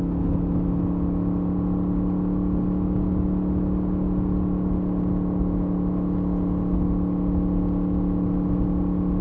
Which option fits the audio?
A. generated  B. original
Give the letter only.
B